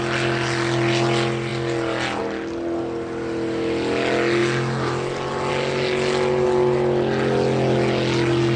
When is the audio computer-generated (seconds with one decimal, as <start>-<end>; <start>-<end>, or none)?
none